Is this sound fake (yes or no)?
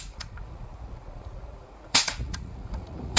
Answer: yes